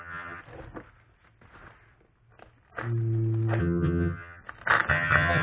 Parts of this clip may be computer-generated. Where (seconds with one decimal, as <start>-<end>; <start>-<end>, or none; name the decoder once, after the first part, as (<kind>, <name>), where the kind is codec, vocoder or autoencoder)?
0.0-0.4 (vocoder, HiFi-GAN); 3.6-4.4; 4.9-5.4